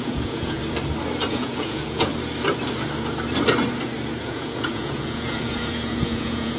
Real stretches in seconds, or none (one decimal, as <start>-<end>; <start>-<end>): 0.6-1.3; 2.1-4.2